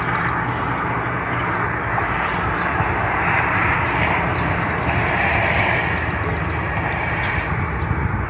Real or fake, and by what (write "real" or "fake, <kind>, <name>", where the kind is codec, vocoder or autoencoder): real